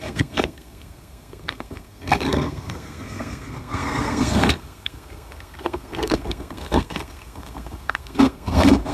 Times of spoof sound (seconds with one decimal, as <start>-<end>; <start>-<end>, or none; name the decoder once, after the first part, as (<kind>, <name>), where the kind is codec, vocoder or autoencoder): 0.0-8.9 (codec, SNAC)